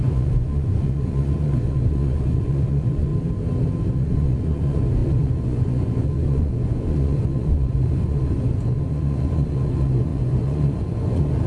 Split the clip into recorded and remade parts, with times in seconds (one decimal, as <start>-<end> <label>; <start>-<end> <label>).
0.0-3.1 remade; 3.1-3.9 recorded; 3.9-11.5 remade